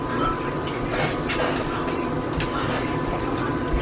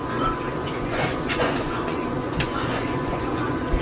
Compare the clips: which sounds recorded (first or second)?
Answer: first